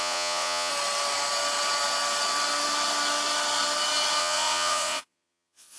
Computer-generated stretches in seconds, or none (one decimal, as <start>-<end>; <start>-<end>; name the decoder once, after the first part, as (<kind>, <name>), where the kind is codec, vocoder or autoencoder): 0.0-0.7 (vocoder, Vocos); 4.2-5.8